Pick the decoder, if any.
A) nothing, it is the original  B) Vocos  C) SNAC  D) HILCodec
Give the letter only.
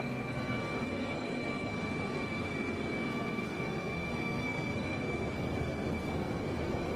C